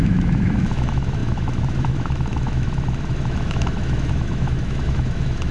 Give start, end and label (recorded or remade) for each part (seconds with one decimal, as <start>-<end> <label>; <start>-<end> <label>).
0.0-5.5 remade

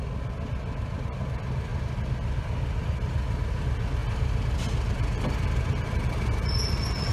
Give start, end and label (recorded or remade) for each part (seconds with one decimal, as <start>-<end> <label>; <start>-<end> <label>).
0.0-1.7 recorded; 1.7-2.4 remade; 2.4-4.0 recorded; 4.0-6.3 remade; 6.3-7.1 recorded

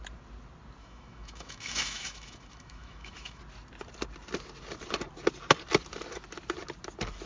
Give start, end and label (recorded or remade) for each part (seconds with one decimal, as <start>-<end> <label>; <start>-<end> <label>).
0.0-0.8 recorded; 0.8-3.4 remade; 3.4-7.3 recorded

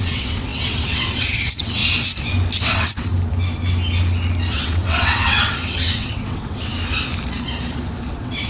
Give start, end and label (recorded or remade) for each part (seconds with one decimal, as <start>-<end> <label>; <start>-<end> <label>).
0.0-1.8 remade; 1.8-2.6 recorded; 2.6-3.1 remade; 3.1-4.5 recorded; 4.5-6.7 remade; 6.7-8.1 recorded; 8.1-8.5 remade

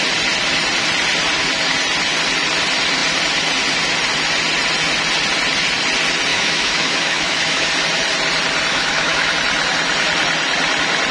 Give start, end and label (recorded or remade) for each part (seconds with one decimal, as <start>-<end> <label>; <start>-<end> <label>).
0.0-6.3 recorded; 6.3-7.7 remade; 7.7-8.7 recorded; 8.7-9.3 remade; 9.3-11.1 recorded